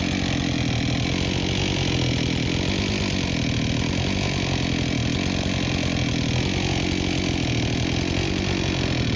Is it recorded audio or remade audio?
recorded